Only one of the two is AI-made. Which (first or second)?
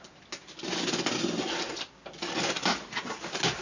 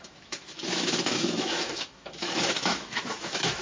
second